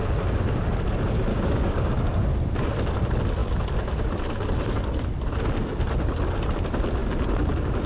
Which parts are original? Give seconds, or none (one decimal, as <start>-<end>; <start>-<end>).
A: 0.0-1.3; 1.9-7.9